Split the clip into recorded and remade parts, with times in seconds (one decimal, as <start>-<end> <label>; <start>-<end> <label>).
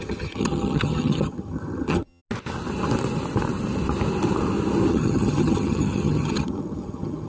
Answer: 0.0-2.2 remade; 2.2-4.9 recorded; 4.9-7.3 remade